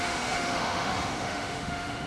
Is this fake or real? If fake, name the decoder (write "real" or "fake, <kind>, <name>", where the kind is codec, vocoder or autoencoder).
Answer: fake, autoencoder, DAC-VAE